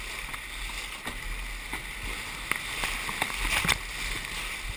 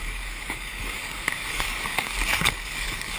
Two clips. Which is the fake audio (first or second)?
second